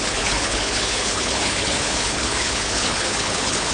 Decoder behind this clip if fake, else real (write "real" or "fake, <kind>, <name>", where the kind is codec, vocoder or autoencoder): fake, codec, HILCodec